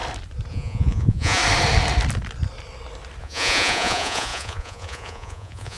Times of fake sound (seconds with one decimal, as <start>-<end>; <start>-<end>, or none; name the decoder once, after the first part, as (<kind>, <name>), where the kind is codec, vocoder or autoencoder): 0.5-1.4 (vocoder, Vocos); 3.2-5.8